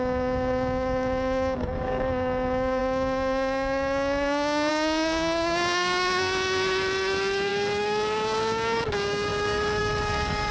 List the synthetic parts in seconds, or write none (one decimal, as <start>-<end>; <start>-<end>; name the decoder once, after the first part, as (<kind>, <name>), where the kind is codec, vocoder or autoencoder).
0.0-10.5 (codec, DAC)

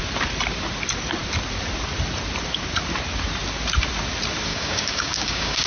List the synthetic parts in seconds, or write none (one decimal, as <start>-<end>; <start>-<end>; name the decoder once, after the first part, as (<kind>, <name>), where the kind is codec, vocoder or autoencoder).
4.5-5.7 (codec, DAC)

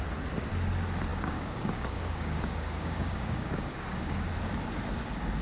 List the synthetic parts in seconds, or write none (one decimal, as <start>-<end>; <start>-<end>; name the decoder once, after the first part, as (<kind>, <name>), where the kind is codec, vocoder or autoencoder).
1.1-4.3 (codec, DAC)